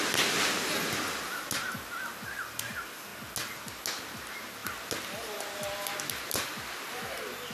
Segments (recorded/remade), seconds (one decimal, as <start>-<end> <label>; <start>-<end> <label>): 0.0-7.5 recorded